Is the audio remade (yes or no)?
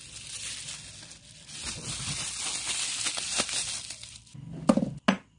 no